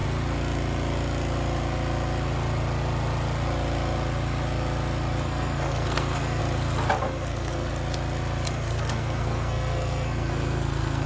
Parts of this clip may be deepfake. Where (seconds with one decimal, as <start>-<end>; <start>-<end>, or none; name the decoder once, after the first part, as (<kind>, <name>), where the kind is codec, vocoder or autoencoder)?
5.2-6.4 (codec, SNAC); 7.0-7.7; 8.5-11.1